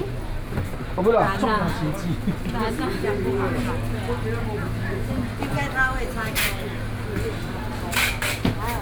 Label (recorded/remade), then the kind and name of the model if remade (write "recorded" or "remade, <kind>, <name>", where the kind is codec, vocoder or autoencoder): recorded